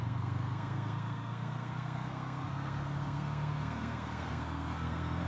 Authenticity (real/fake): fake